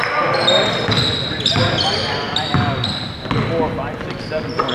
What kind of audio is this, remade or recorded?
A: recorded